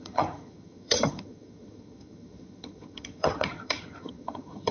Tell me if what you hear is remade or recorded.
remade